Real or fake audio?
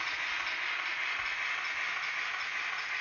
real